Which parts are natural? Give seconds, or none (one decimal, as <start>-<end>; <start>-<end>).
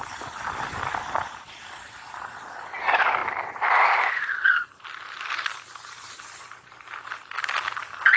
0.0-8.2